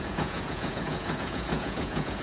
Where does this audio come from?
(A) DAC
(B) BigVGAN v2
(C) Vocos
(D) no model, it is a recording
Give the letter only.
C